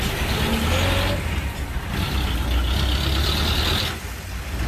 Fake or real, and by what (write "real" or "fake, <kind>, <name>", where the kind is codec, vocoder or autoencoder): real